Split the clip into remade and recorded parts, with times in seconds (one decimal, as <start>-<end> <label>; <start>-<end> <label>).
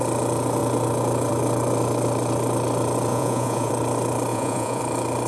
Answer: 0.0-3.1 recorded; 3.1-3.7 remade; 3.7-4.3 recorded; 4.3-4.8 remade; 4.8-5.3 recorded